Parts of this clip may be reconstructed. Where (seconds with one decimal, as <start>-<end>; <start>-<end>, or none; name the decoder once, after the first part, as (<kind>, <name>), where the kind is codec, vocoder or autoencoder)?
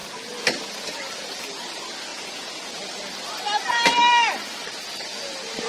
2.1-2.7 (vocoder, Vocos)